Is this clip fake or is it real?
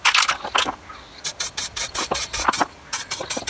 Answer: real